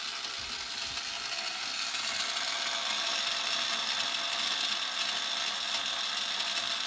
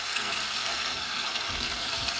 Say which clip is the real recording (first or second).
first